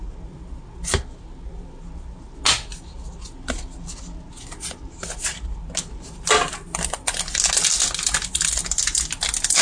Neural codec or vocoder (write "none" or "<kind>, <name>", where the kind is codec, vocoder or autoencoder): none